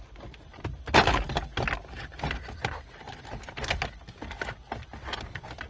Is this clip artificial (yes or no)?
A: no